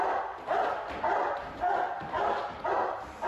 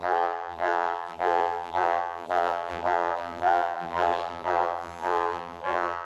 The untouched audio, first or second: first